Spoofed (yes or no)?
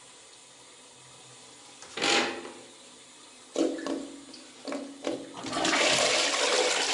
no